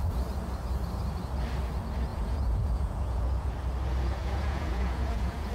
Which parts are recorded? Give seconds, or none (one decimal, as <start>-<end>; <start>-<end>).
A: 0.0-2.1; 3.5-4.2